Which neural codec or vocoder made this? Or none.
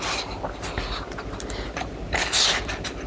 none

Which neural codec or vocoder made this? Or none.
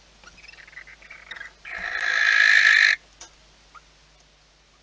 none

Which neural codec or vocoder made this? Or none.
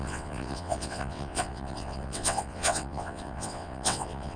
vocoder, WaveNeXt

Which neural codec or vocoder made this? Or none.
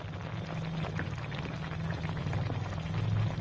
none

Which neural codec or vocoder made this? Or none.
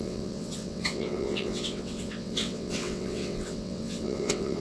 vocoder, WaveNeXt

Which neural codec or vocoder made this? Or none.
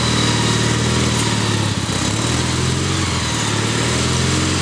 none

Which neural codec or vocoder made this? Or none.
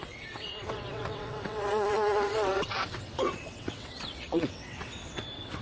vocoder, WaveNeXt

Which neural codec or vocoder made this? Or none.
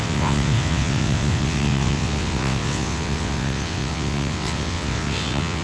vocoder, WaveNeXt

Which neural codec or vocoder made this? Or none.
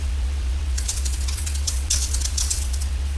vocoder, WaveNeXt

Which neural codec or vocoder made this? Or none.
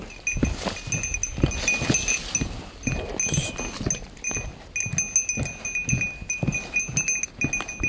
none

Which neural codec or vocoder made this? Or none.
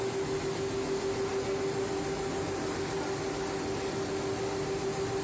none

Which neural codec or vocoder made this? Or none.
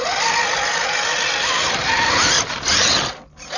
none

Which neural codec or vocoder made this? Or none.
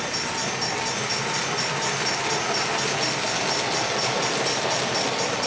none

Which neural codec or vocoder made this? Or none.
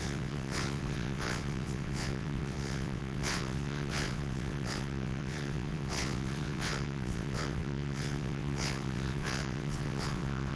vocoder, WaveNeXt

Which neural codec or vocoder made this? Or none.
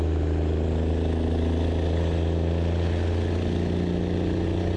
none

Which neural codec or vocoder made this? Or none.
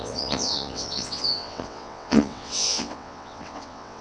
vocoder, WaveNeXt